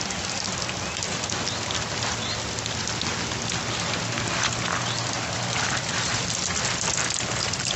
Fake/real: real